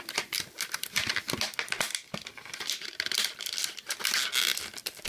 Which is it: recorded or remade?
recorded